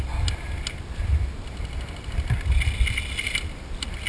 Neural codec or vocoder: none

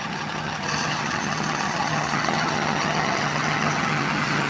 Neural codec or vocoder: vocoder, HiFi-GAN